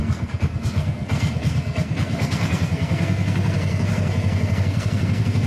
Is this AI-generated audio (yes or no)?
yes